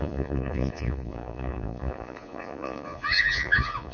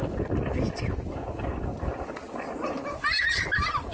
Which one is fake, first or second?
first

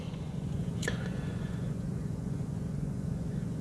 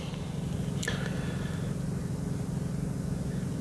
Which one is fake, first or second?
first